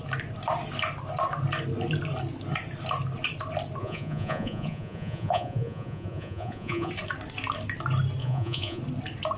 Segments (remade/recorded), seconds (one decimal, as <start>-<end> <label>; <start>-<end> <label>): 0.0-3.8 recorded; 3.8-6.9 remade; 6.9-8.2 recorded; 8.2-8.8 remade; 8.8-9.4 recorded